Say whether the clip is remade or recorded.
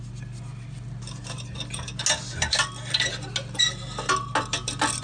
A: recorded